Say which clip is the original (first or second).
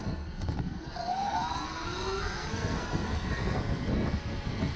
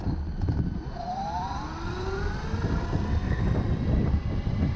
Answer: second